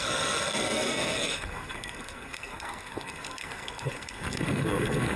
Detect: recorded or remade remade